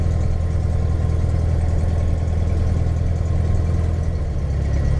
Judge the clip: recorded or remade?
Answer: recorded